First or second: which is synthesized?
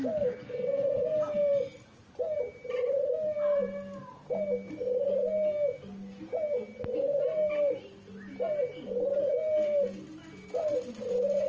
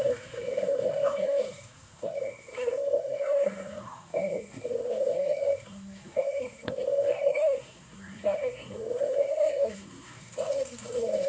second